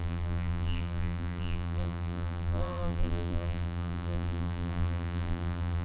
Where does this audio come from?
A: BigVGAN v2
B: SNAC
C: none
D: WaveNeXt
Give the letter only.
A